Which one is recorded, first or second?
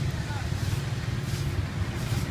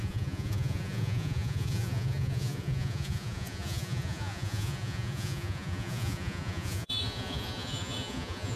first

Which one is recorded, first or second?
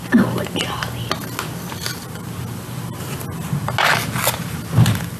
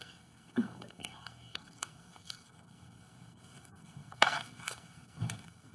first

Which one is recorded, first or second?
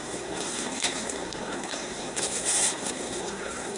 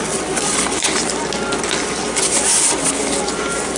second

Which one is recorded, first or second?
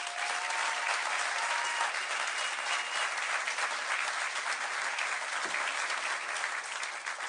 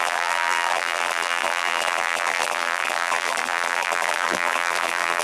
first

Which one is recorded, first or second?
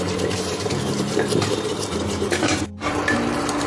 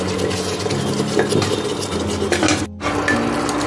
second